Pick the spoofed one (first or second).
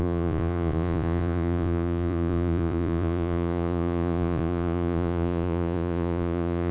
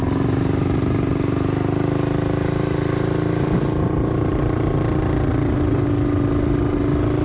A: first